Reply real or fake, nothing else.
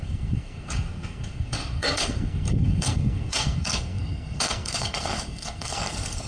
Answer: fake